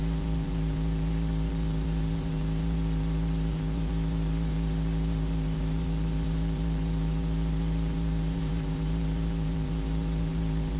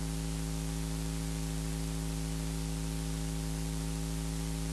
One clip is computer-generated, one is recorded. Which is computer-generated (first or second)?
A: first